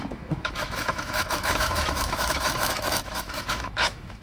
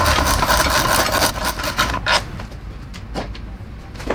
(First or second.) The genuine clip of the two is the second